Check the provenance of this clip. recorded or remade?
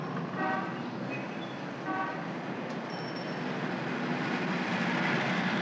recorded